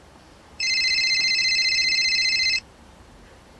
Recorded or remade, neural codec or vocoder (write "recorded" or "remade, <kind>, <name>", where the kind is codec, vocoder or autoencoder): remade, vocoder, BigVGAN v2